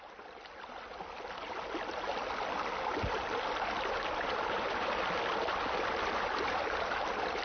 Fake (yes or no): no